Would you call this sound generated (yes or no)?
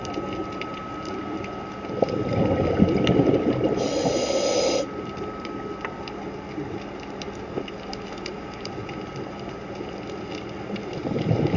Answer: no